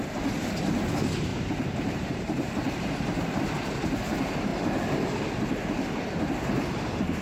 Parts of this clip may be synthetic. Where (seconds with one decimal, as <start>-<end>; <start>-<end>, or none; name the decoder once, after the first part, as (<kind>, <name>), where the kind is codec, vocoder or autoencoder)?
1.3-3.4 (vocoder, BigVGAN v2)